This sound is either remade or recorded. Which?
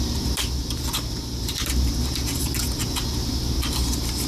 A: remade